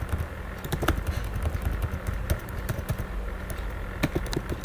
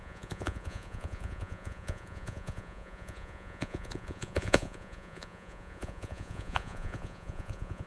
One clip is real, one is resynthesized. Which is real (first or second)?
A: first